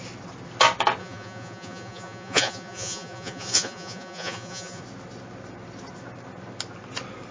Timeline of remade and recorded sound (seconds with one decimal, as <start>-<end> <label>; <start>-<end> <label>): 0.0-1.0 recorded; 1.0-4.8 remade; 4.8-7.3 recorded